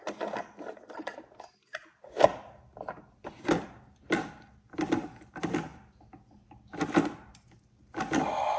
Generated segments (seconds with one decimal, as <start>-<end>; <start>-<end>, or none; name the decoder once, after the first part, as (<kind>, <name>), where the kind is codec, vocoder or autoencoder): none